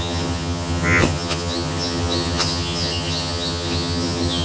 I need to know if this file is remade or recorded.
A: remade